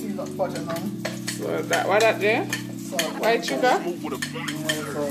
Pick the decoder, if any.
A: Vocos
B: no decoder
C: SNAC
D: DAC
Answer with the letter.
B